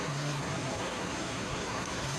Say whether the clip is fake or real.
fake